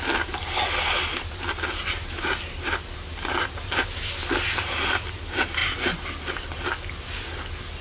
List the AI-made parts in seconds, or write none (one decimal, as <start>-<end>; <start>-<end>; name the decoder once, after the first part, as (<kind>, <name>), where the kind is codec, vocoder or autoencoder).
none